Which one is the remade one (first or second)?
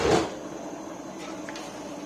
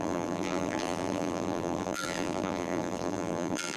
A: second